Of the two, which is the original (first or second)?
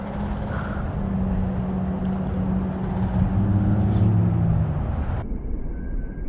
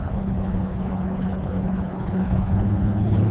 first